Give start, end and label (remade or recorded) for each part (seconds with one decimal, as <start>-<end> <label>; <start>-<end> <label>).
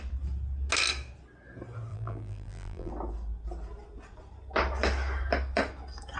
0.0-1.9 recorded; 1.9-2.9 remade; 2.9-6.2 recorded